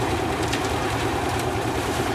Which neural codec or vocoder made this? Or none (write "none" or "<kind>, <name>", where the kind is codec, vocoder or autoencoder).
vocoder, BigVGAN v2